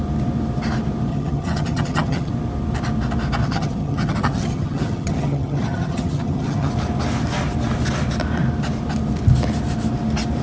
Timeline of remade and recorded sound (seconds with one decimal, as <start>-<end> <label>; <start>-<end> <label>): 0.0-1.1 recorded; 1.1-2.3 remade; 2.3-3.4 recorded; 3.4-6.7 remade; 6.7-10.4 recorded